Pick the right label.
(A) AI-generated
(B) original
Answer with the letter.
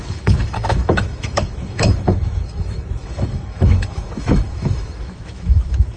A